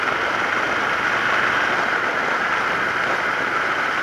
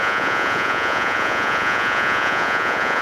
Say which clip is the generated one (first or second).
second